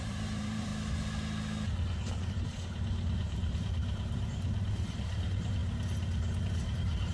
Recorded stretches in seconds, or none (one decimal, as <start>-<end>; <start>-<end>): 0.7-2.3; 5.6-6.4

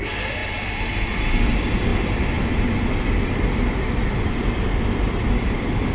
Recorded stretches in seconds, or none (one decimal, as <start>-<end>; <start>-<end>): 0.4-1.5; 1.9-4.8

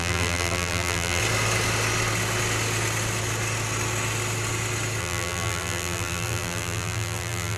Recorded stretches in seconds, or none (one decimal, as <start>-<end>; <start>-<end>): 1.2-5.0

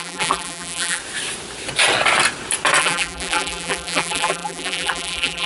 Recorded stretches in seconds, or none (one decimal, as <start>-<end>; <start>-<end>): 1.0-2.8

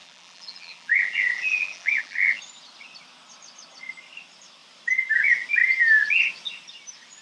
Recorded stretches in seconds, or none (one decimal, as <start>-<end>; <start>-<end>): 2.4-7.2

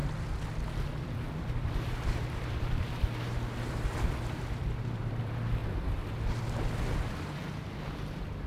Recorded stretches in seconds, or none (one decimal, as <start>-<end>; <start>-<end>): 0.0-1.0; 5.6-8.5

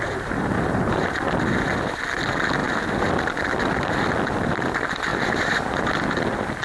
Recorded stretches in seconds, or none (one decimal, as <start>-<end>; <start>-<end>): 0.0-5.1; 5.9-6.6